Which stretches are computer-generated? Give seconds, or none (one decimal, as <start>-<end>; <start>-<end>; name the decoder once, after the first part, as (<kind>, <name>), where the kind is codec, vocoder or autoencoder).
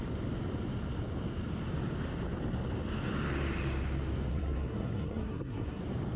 4.3-5.8 (codec, SNAC)